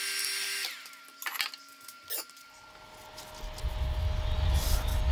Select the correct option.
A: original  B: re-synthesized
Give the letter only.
A